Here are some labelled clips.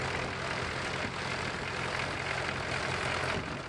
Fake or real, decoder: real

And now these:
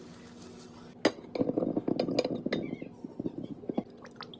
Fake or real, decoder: real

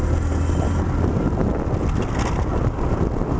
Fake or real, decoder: real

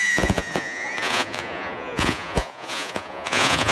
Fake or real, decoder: fake, vocoder, Vocos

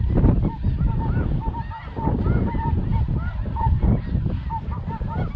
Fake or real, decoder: real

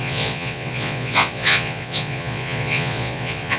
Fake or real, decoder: fake, vocoder, Vocos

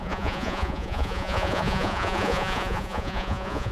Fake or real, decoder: fake, vocoder, Vocos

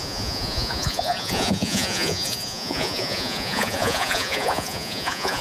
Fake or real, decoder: fake, vocoder, Vocos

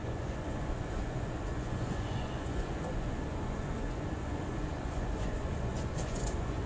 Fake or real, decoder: fake, vocoder, Vocos